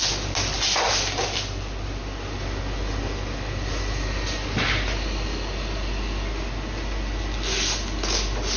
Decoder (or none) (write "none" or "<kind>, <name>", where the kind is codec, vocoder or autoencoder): none